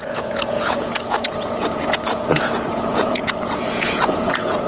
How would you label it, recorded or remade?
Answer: remade